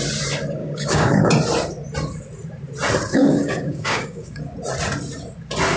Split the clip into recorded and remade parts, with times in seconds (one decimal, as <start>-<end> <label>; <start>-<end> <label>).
0.0-0.6 recorded; 0.6-1.3 remade; 1.3-3.1 recorded; 3.1-4.4 remade; 4.4-5.8 recorded